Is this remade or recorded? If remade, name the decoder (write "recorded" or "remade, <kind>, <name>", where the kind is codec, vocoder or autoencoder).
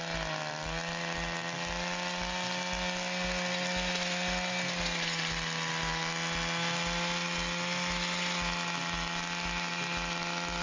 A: recorded